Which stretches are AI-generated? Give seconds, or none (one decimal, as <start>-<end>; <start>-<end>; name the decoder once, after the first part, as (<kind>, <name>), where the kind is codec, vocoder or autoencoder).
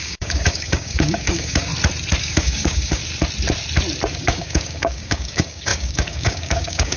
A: 0.0-1.7 (codec, DAC); 2.2-3.0; 4.1-7.0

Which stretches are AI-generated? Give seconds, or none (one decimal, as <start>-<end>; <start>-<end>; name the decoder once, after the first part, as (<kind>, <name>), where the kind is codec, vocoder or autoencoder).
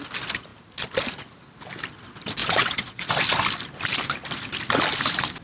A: 2.4-3.1 (vocoder, Vocos)